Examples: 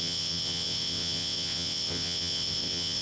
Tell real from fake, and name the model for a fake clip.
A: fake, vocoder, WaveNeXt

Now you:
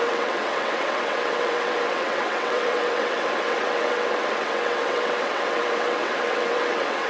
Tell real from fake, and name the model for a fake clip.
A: fake, vocoder, WaveNeXt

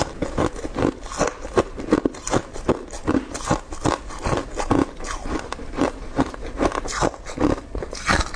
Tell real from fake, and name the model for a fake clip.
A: real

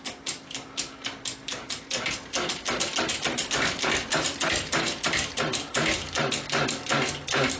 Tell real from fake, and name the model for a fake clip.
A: real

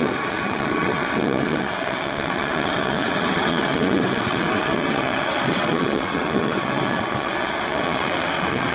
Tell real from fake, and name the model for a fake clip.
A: fake, vocoder, WaveNeXt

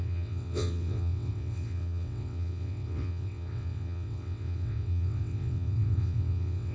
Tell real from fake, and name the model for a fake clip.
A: fake, vocoder, WaveNeXt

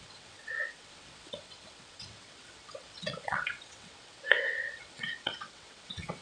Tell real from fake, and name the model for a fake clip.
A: fake, vocoder, WaveNeXt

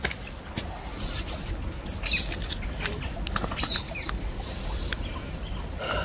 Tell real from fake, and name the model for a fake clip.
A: real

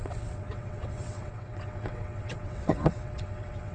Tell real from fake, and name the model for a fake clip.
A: fake, vocoder, WaveNeXt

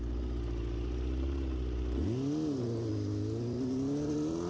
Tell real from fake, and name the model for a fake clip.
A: real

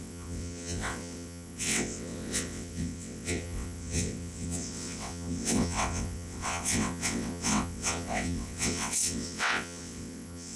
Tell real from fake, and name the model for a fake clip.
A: fake, vocoder, WaveNeXt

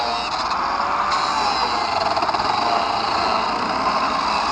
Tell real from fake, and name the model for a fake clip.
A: real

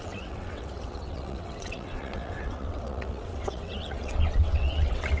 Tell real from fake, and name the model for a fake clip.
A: fake, vocoder, WaveNeXt